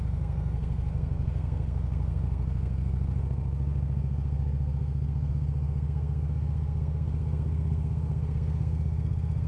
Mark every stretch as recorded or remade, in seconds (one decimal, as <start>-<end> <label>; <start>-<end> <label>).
0.0-9.5 remade